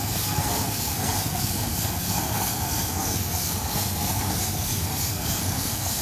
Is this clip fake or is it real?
fake